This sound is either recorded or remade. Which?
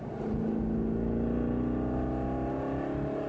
recorded